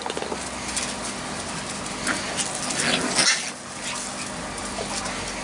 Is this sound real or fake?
real